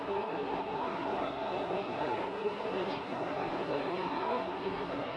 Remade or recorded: remade